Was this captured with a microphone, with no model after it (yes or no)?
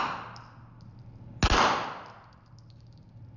yes